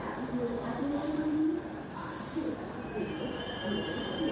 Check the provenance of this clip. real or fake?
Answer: real